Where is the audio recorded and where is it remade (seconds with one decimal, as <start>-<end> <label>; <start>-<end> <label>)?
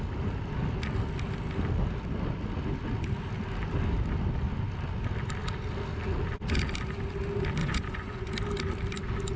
0.0-7.6 recorded; 7.6-8.3 remade; 8.3-9.4 recorded